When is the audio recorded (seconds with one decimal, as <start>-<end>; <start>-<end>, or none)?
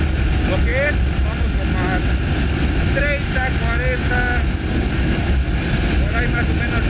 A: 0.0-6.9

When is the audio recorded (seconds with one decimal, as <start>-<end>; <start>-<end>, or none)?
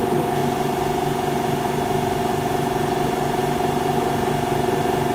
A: 0.0-5.1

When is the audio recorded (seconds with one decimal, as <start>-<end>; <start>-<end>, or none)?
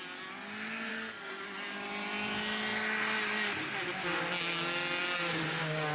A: 0.0-0.9; 1.4-5.9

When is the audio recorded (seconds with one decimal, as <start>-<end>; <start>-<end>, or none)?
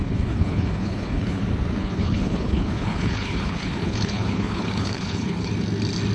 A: 1.4-1.8; 5.5-6.1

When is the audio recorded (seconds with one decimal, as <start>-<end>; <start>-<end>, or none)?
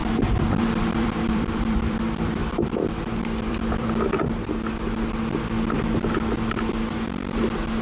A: 4.7-7.8